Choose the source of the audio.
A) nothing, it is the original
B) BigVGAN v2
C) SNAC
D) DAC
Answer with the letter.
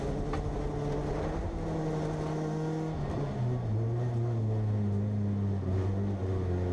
A